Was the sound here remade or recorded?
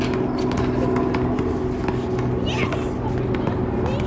recorded